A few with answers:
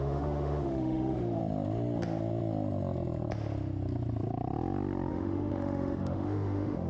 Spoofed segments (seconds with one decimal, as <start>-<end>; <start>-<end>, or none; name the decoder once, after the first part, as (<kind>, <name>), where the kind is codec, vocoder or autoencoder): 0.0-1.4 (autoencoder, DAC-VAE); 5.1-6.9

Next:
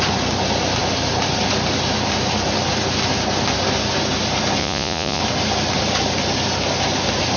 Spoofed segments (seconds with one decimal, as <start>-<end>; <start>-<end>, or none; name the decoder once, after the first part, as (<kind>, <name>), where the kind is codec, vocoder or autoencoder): 4.6-5.2 (vocoder, Vocos)

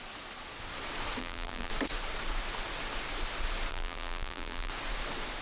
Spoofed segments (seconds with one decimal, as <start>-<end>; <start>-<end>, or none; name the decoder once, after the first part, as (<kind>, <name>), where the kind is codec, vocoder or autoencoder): 1.2-1.7 (vocoder, BigVGAN v2); 3.7-4.7

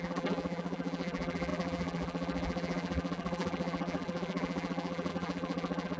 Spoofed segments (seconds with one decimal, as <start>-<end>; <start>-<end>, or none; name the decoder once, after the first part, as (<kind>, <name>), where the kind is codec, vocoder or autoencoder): 0.0-6.0 (vocoder, BigVGAN v2)